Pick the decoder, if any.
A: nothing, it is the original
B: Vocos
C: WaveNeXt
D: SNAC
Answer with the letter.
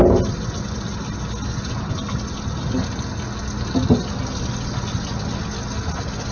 A